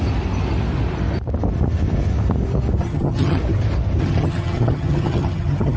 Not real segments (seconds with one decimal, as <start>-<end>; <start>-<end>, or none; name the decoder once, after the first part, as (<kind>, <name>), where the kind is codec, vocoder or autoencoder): 2.8-3.4 (vocoder, HiFi-GAN); 4.0-5.8